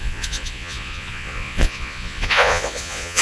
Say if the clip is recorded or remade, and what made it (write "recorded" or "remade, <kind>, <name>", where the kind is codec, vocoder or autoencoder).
remade, vocoder, Vocos